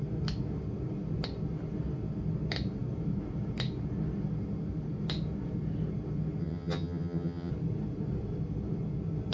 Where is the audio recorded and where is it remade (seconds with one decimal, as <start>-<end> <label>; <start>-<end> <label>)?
0.0-6.4 recorded; 6.4-7.5 remade; 7.5-9.3 recorded